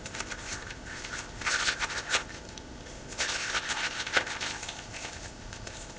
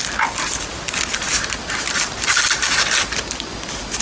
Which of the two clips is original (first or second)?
second